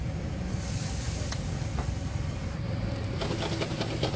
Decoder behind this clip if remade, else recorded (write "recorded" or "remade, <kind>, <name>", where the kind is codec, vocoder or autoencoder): recorded